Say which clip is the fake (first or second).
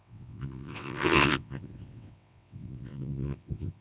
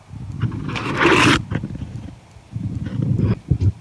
first